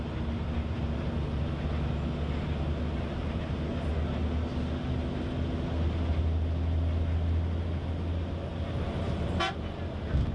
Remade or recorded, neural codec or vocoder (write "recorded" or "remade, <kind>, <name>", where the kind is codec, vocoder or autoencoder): recorded